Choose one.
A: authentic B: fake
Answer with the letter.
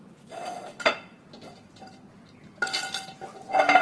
A